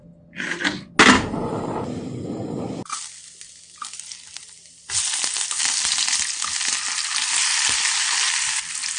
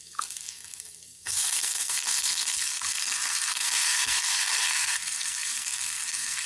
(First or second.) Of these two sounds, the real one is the first